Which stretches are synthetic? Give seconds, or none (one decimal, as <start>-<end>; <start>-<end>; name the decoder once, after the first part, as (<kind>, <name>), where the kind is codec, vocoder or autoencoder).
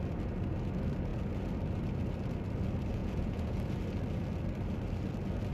3.0-3.6 (vocoder, Vocos)